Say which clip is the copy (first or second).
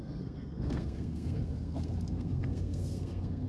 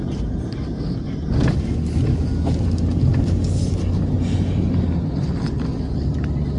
first